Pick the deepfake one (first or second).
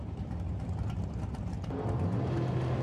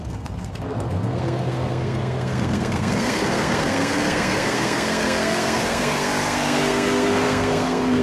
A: second